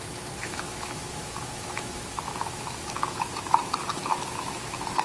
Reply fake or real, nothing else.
fake